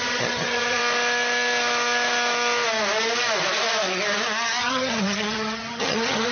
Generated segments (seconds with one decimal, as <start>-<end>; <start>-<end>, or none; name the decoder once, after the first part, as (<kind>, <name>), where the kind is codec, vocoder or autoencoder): 0.0-0.8 (vocoder, HiFi-GAN); 4.6-6.3